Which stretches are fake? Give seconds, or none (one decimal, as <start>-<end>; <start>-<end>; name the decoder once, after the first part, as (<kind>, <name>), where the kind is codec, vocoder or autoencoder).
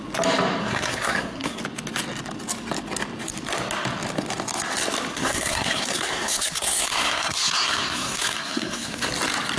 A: 0.6-1.6 (codec, SNAC); 5.1-9.1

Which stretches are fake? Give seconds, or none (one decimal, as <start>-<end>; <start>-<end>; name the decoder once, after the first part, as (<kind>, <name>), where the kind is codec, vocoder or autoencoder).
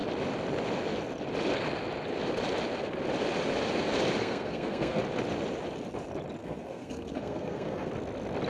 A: 4.2-5.0 (codec, SNAC); 6.4-7.9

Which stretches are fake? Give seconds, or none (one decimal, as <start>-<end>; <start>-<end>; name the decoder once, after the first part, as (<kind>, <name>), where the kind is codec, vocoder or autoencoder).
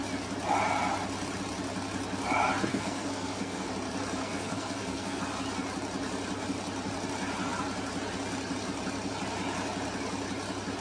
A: 2.7-3.7 (codec, SNAC); 4.2-5.2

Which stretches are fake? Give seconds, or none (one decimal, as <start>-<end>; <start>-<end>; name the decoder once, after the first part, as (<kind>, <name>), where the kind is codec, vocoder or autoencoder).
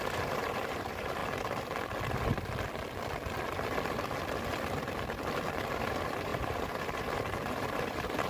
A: 0.0-1.2 (vocoder, BigVGAN v2); 5.7-8.3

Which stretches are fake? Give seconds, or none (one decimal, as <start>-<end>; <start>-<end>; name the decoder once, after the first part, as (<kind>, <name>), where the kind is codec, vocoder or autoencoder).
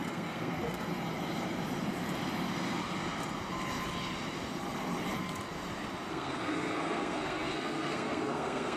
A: 0.0-0.9 (codec, SNAC); 6.1-8.8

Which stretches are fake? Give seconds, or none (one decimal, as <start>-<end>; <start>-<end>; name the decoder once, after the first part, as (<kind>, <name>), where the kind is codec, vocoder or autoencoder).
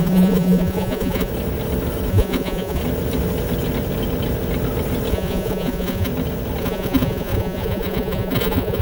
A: 0.0-1.3 (vocoder, Vocos); 2.1-2.8; 5.1-6.1; 6.6-8.8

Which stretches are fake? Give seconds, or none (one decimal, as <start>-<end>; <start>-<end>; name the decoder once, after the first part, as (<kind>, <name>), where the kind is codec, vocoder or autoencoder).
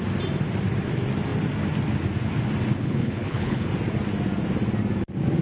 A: 2.8-3.7 (codec, HILCodec)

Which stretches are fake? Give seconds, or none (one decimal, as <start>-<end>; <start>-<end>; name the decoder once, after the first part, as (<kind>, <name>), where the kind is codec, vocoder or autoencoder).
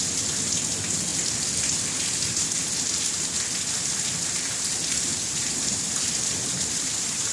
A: 5.1-7.3 (vocoder, BigVGAN v2)